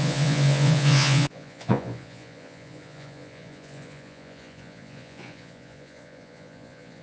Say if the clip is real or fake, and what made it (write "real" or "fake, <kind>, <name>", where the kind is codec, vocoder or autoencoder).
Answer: fake, vocoder, Vocos